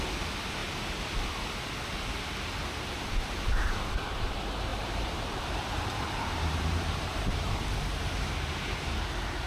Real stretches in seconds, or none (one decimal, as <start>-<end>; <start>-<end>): 0.0-4.7; 7.8-9.5